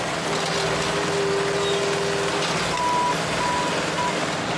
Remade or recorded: recorded